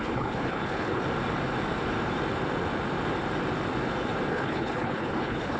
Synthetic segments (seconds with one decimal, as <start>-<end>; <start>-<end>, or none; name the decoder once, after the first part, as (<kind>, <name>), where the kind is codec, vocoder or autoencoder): 0.0-1.0 (codec, HILCodec); 4.3-5.6